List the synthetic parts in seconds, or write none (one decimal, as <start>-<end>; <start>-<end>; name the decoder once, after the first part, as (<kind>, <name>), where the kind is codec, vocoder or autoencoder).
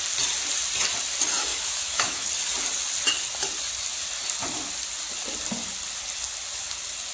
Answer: 1.5-2.3 (autoencoder, DAC-VAE)